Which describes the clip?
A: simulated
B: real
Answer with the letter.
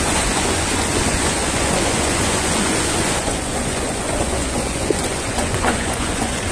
A